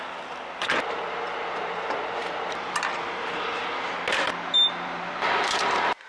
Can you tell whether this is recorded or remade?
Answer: recorded